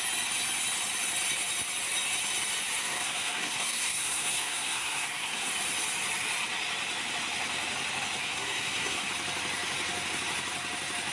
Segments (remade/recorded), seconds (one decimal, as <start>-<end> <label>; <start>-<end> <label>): 0.0-2.8 recorded; 2.8-5.5 remade; 5.5-8.2 recorded; 8.2-9.1 remade; 9.1-11.1 recorded